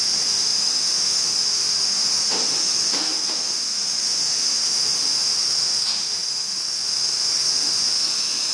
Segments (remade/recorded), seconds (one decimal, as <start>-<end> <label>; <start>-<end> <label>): 0.0-8.5 remade